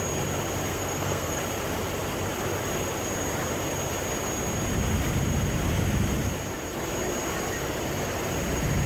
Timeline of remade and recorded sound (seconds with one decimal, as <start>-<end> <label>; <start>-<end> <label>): 0.0-0.7 recorded; 0.7-1.4 remade; 1.4-8.9 recorded